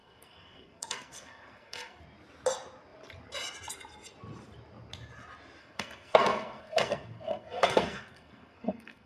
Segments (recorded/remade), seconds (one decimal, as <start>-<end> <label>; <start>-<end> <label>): 0.0-2.0 remade; 2.0-5.6 recorded; 5.6-9.1 remade